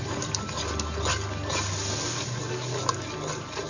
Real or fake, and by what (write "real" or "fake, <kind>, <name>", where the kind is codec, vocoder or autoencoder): real